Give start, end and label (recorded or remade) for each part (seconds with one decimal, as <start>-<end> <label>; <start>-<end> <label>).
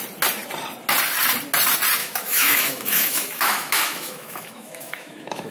0.0-2.0 recorded; 2.0-5.5 remade